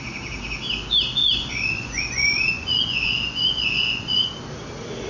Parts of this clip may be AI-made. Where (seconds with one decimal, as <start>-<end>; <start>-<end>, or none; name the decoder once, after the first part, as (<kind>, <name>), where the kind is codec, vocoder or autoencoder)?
1.2-4.3 (vocoder, Vocos)